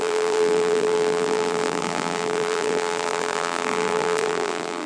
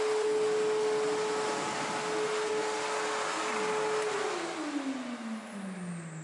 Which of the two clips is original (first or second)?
second